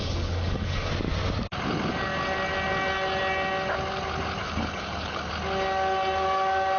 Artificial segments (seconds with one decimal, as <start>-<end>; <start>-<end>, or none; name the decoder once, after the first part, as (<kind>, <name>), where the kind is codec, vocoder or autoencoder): 0.0-0.9 (codec, HILCodec); 4.4-5.3